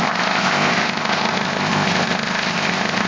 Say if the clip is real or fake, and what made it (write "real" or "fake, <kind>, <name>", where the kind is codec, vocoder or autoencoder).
fake, codec, ZipCodec